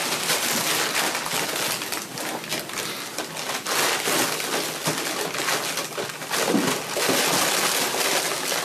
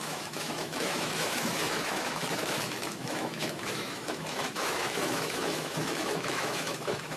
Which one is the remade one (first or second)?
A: second